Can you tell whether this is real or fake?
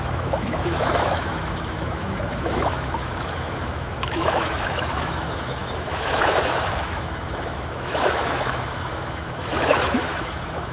fake